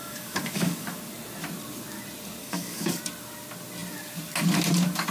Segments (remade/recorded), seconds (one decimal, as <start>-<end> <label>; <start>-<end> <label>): 0.0-1.0 remade; 1.0-2.4 recorded; 2.4-3.0 remade; 3.0-5.1 recorded

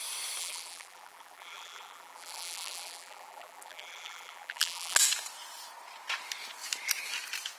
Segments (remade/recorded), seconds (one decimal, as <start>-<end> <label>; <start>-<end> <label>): 0.0-0.4 recorded; 0.4-5.0 remade; 5.0-7.6 recorded

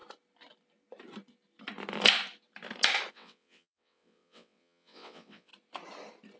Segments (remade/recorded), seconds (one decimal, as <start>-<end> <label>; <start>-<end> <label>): 0.0-3.1 recorded; 3.1-5.5 remade; 5.5-6.4 recorded

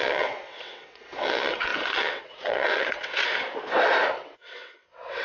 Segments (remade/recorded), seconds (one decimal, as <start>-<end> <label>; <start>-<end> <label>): 0.0-3.2 remade; 3.2-4.1 recorded; 4.1-5.2 remade

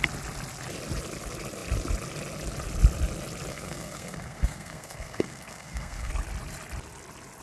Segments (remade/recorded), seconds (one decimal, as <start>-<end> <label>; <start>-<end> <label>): 0.0-3.5 recorded; 3.5-6.1 remade; 6.1-7.4 recorded

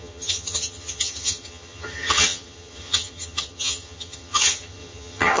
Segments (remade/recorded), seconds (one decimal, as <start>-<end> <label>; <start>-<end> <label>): 0.0-5.4 remade

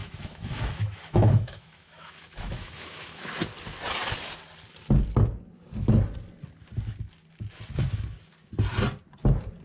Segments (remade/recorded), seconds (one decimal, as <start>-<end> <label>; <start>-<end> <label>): 0.0-3.3 remade; 3.3-9.6 recorded